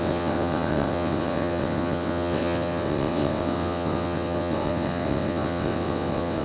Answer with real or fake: fake